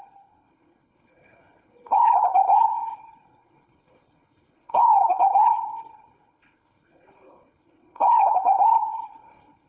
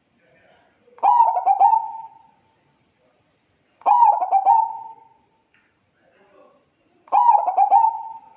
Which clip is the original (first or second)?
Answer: second